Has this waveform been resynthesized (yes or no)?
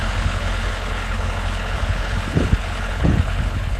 yes